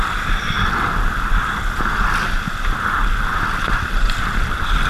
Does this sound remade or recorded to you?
recorded